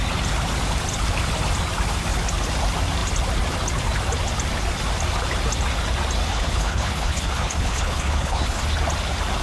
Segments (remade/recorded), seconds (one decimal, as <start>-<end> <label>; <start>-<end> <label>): 0.0-6.3 recorded; 6.3-8.6 remade; 8.6-9.4 recorded